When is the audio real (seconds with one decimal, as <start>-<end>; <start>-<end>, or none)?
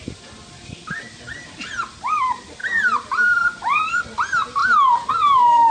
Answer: 0.0-2.6; 3.9-5.7